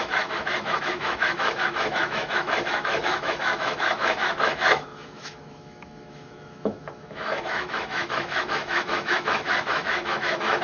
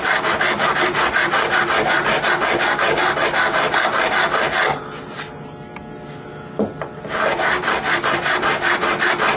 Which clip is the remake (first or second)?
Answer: first